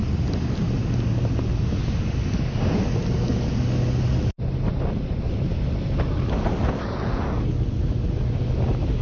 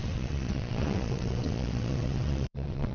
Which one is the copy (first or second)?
second